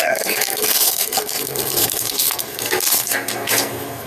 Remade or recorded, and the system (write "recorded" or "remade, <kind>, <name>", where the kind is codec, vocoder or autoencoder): remade, codec, SNAC